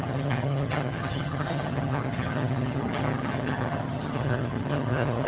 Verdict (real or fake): fake